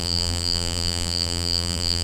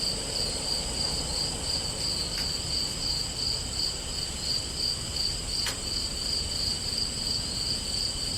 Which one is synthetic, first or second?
first